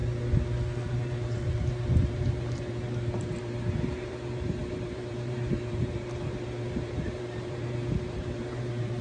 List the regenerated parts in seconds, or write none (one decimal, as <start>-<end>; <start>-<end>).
0.9-9.0